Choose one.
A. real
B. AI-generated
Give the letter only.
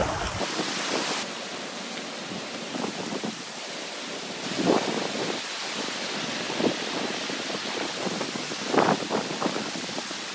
A